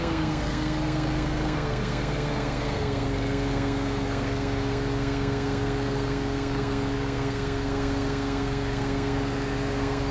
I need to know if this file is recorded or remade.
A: remade